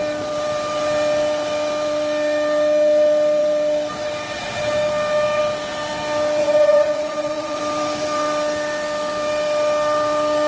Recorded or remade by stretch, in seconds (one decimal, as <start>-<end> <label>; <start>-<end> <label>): 0.0-6.4 recorded; 6.4-7.6 remade; 7.6-10.5 recorded